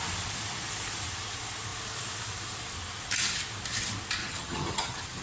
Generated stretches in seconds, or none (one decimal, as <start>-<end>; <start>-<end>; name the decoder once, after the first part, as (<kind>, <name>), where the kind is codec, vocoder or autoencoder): 4.2-5.2 (vocoder, HiFi-GAN)